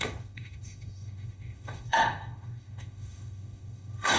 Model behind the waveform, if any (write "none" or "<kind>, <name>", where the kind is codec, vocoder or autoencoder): autoencoder, DAC-VAE